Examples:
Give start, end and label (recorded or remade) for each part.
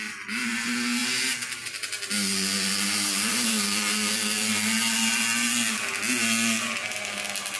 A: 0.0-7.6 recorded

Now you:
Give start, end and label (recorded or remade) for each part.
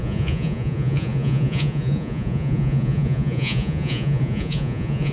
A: 0.0-5.1 remade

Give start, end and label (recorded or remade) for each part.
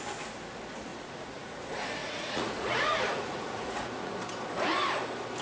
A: 0.0-0.9 recorded; 0.9-1.6 remade; 1.6-2.0 recorded; 2.0-4.1 remade; 4.1-5.4 recorded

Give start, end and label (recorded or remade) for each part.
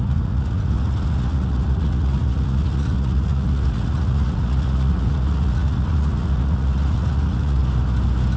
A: 0.0-7.6 remade; 7.6-8.4 recorded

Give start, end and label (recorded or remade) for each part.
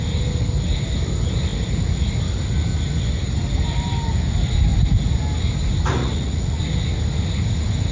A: 0.0-6.0 recorded; 6.0-6.6 remade; 6.6-7.9 recorded